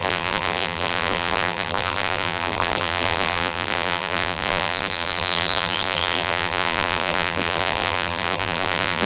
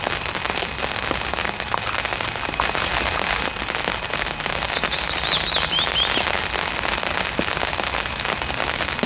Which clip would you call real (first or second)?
second